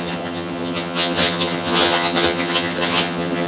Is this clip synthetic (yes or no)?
yes